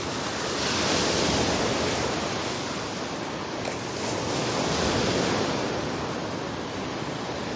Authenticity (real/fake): real